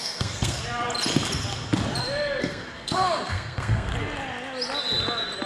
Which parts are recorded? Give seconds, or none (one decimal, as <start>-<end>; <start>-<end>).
0.6-2.4; 3.9-5.5